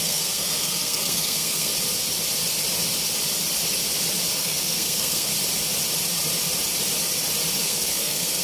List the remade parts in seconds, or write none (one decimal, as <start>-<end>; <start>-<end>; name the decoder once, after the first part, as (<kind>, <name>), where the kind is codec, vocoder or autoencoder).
0.0-1.7 (codec, SNAC); 4.4-5.3; 7.6-8.4